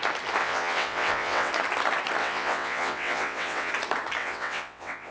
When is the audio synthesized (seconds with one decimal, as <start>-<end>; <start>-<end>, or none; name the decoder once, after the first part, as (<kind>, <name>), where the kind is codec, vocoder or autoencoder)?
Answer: 0.4-1.5 (vocoder, WaveNeXt); 2.2-3.7; 4.2-5.1